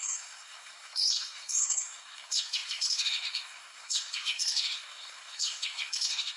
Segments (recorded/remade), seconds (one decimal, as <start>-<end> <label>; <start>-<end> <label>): 0.0-6.4 remade